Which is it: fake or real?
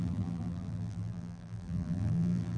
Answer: fake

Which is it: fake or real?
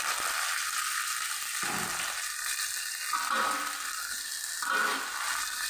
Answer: real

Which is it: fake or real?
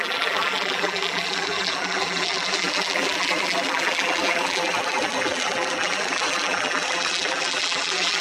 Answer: fake